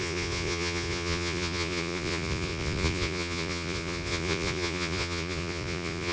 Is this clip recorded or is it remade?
remade